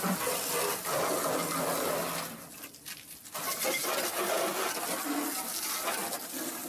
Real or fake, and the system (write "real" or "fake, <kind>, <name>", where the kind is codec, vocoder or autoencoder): real